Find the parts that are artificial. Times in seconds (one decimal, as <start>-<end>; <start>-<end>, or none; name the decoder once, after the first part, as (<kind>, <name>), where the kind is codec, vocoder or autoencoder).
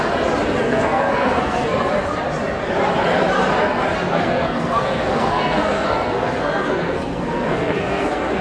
0.6-1.8 (codec, SNAC); 4.1-8.4